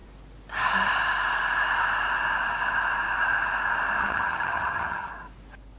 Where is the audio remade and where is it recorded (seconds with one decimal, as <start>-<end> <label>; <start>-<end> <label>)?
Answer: 0.0-4.0 recorded; 4.0-5.1 remade; 5.1-5.8 recorded